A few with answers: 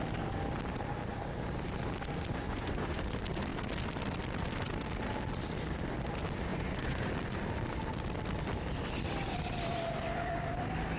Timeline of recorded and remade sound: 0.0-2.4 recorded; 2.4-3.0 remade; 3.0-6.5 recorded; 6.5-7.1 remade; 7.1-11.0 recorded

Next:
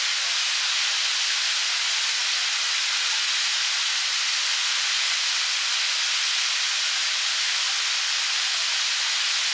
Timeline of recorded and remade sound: 0.0-9.5 recorded

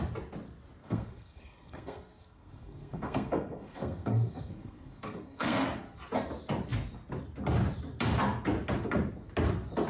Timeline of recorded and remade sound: 0.0-0.8 recorded; 0.8-5.7 remade; 5.7-9.9 recorded